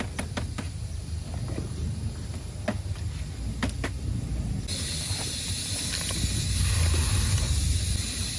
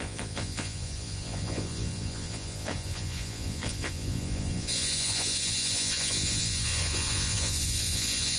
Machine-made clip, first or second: second